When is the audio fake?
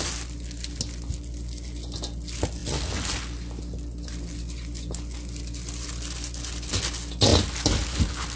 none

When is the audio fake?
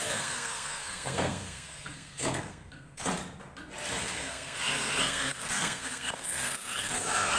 0.0-3.1 (codec, SNAC); 4.0-7.4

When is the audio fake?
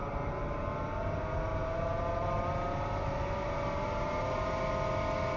1.5-4.7 (vocoder, BigVGAN v2)